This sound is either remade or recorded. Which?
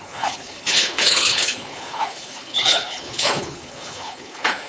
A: remade